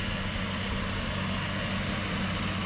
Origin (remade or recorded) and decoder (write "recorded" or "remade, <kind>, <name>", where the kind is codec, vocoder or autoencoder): recorded